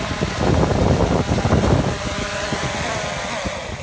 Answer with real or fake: real